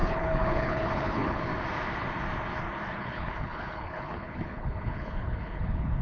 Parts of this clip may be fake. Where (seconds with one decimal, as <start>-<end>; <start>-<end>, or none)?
0.0-1.5; 2.9-6.0